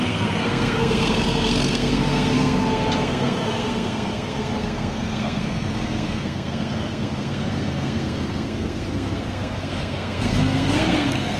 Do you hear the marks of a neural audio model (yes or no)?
yes